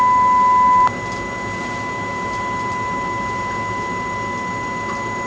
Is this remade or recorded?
recorded